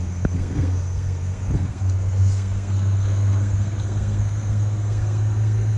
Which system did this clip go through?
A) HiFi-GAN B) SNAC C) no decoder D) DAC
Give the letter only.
B